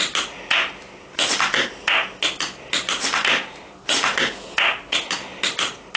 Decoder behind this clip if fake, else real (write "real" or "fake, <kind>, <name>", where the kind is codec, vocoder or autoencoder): real